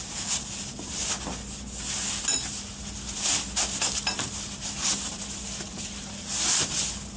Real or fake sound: real